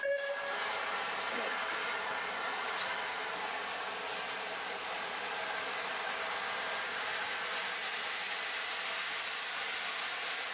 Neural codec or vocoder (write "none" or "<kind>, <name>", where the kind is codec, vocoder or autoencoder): none